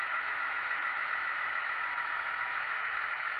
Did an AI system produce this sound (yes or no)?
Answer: yes